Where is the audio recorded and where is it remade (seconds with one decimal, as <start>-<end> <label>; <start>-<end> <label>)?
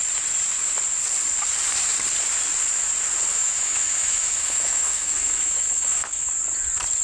0.0-3.3 recorded; 3.3-6.3 remade; 6.3-7.0 recorded